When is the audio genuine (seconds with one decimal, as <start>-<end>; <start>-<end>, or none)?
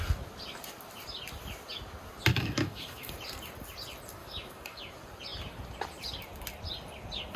0.0-2.3; 3.1-4.2; 4.8-7.4